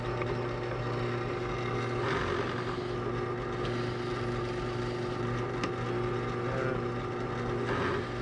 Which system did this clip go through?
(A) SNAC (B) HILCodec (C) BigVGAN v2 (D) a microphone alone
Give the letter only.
D